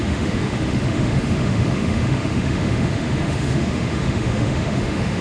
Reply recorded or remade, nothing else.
remade